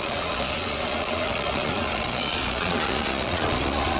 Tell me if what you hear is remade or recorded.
remade